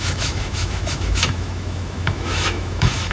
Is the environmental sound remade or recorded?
remade